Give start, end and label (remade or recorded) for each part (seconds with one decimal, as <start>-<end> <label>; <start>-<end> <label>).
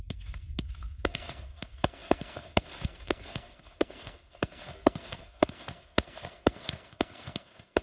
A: 0.0-7.8 remade